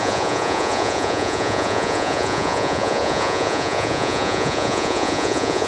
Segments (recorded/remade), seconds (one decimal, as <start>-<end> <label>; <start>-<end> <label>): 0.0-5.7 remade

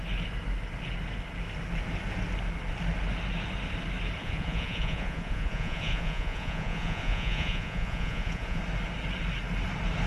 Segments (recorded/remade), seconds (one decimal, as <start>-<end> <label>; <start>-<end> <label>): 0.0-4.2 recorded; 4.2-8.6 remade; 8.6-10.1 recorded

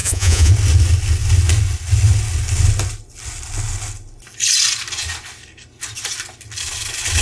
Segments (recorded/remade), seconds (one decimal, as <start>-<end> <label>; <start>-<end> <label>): 0.0-0.5 remade; 0.5-7.2 recorded